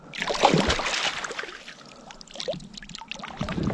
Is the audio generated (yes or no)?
no